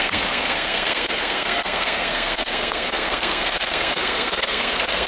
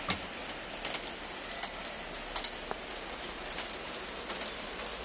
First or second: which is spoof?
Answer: first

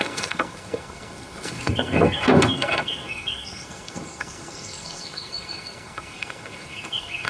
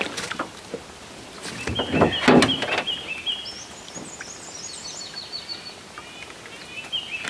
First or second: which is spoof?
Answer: first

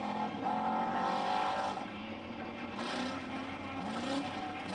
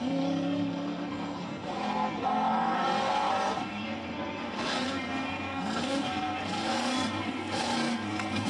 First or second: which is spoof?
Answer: second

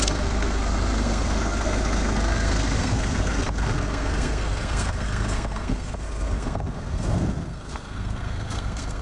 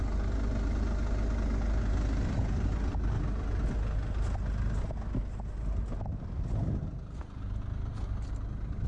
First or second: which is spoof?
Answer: first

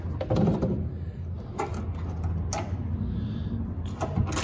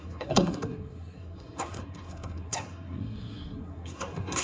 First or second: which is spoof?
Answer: second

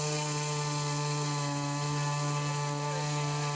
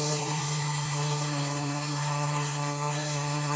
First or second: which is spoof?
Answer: second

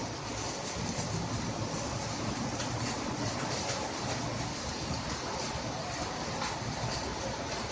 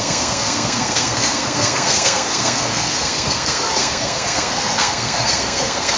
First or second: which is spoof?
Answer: second